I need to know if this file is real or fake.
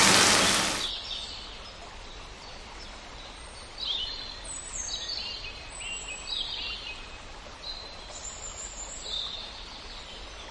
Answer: real